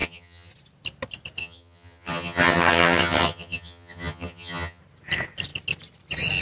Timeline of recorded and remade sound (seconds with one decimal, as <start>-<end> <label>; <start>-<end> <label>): 0.0-0.5 remade; 0.5-1.4 recorded; 1.4-4.8 remade; 4.8-6.4 recorded